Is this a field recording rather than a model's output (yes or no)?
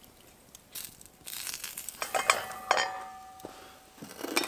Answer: yes